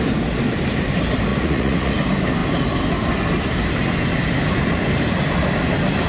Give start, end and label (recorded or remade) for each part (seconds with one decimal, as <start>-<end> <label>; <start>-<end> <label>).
0.0-1.3 recorded; 1.3-1.9 remade; 1.9-6.1 recorded